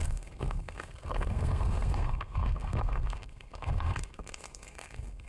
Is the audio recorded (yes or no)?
no